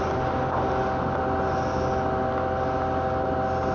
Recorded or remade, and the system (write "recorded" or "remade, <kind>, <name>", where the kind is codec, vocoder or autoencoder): recorded